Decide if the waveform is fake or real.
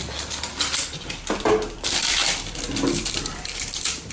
fake